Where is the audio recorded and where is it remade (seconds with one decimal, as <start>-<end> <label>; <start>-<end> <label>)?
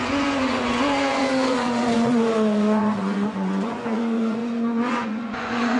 0.0-5.8 remade